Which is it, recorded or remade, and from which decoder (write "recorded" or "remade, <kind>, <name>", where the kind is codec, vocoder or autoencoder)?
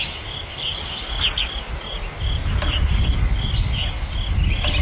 recorded